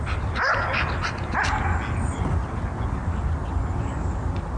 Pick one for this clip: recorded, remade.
recorded